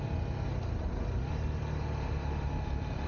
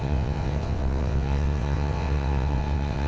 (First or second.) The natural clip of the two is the first